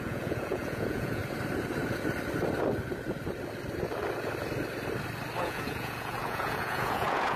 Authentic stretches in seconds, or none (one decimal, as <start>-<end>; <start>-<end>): 1.2-5.4